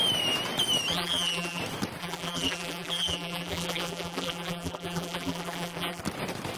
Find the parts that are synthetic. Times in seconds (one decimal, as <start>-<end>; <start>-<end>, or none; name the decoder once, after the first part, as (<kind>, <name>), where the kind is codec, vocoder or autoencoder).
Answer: 0.9-1.6 (vocoder, BigVGAN v2); 2.0-6.0

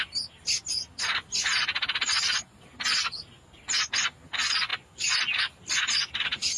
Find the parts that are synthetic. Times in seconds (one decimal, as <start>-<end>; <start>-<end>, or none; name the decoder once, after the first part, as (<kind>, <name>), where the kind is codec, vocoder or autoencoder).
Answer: none

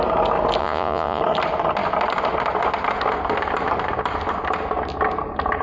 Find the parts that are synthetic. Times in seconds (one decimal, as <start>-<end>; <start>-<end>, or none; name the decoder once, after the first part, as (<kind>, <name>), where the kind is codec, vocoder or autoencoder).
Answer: 0.6-1.2 (vocoder, Vocos)

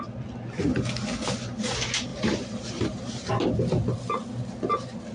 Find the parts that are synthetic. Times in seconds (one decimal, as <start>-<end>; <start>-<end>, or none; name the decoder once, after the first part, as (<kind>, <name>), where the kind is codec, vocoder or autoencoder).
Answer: 2.1-3.3 (vocoder, BigVGAN v2)

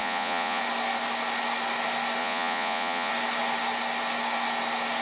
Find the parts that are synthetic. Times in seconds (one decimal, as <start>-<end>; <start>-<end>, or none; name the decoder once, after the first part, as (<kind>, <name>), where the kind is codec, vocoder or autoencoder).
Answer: 0.0-0.6 (vocoder, Vocos); 2.2-3.1

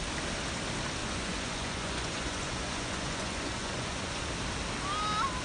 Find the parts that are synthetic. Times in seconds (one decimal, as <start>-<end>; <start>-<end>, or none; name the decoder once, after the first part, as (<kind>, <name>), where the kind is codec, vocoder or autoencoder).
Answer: 1.0-4.2 (vocoder, Vocos)

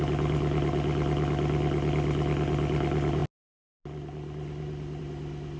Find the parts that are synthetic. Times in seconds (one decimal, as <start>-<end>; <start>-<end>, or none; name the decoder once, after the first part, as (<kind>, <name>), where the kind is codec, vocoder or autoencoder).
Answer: none

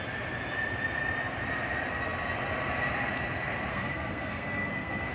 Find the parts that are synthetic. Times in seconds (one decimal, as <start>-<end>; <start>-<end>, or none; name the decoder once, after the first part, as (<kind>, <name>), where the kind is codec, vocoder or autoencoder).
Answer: 3.7-5.1 (codec, SNAC)